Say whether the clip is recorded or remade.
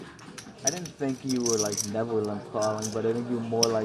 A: recorded